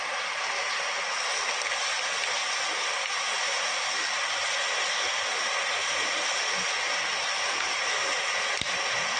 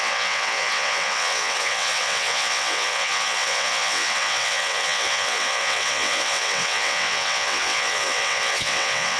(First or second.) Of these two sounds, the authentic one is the first